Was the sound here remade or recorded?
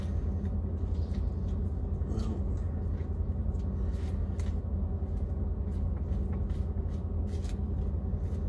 recorded